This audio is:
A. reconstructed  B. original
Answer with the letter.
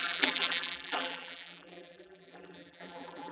A